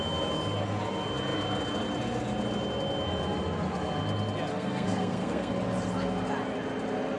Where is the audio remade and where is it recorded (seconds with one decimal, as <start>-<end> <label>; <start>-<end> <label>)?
0.0-4.5 recorded; 4.5-5.5 remade; 5.5-7.2 recorded